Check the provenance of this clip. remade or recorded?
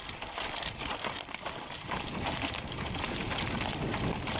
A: recorded